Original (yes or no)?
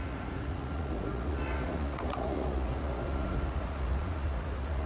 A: no